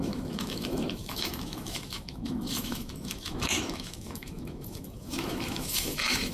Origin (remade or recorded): remade